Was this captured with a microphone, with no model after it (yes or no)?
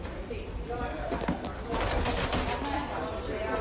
yes